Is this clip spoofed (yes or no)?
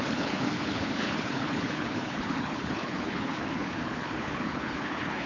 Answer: yes